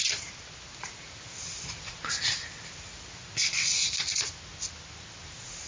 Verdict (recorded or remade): recorded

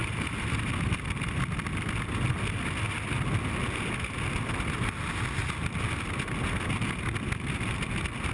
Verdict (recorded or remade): recorded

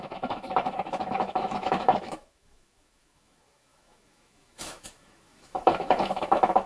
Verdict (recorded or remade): remade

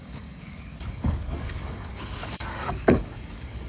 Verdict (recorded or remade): remade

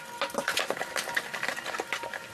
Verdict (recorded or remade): recorded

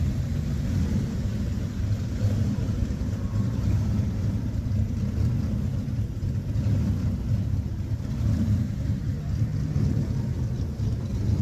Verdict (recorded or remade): remade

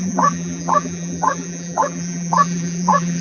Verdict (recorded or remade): remade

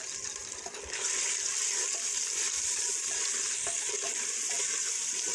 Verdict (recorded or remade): recorded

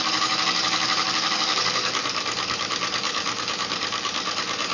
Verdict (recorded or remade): remade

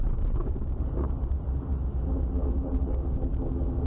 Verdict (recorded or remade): recorded